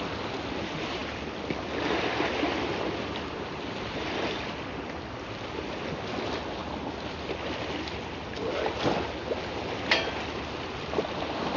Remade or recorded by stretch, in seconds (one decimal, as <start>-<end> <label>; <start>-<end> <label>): 0.0-11.6 recorded

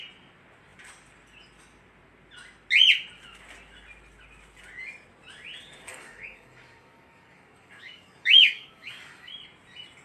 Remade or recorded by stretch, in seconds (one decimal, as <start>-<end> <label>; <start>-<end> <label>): 0.0-5.9 recorded; 5.9-9.3 remade; 9.3-10.0 recorded

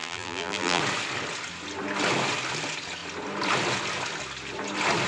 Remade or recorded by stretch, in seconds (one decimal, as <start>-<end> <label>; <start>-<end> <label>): 0.0-0.8 remade; 0.8-5.1 recorded

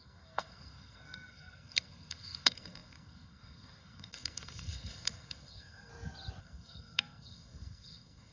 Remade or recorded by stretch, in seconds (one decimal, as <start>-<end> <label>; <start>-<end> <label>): 0.0-5.9 remade; 5.9-6.4 recorded; 6.4-8.3 remade

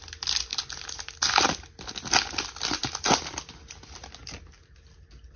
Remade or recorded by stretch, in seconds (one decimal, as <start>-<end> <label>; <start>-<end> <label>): 0.0-5.4 recorded

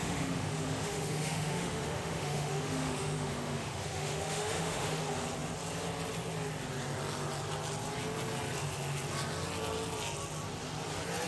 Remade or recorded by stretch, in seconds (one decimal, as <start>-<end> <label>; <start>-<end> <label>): 0.0-5.0 remade; 5.0-11.3 recorded

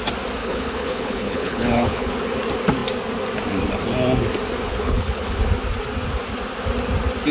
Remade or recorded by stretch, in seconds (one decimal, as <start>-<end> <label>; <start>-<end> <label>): 0.0-0.4 recorded; 0.4-2.1 remade; 2.1-4.7 recorded; 4.7-5.4 remade; 5.4-7.3 recorded

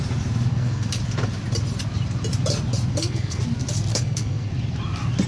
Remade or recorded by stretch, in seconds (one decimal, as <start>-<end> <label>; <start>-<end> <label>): 0.0-0.5 recorded; 0.5-1.0 remade; 1.0-2.9 recorded; 2.9-3.4 remade; 3.4-3.9 recorded; 3.9-4.5 remade; 4.5-5.3 recorded